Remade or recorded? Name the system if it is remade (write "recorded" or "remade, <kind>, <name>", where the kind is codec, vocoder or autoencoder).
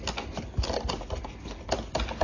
recorded